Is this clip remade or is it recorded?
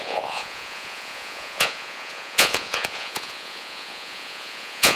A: remade